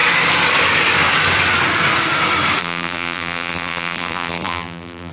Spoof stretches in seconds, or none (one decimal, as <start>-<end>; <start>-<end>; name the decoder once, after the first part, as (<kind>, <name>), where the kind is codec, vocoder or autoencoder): 2.6-5.1 (vocoder, BigVGAN v2)